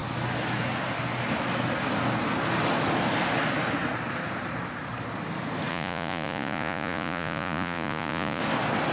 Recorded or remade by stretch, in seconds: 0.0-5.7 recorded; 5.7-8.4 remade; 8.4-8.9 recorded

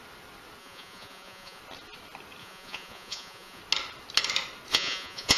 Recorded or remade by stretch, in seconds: 0.0-0.6 recorded; 0.6-1.6 remade; 1.6-2.4 recorded; 2.4-3.6 remade; 3.6-4.7 recorded; 4.7-5.4 remade